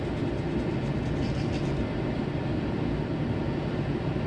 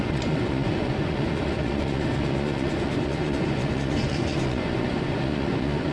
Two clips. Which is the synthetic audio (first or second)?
second